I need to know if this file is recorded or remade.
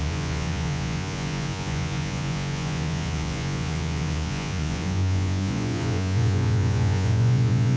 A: remade